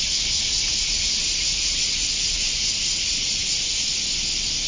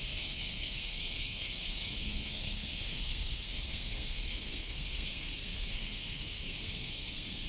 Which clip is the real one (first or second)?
first